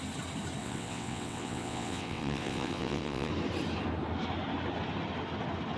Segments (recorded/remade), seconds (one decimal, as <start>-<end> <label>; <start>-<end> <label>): 0.0-0.6 recorded; 0.6-3.3 remade; 3.3-5.8 recorded